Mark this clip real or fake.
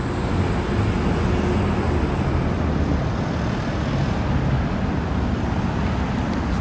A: real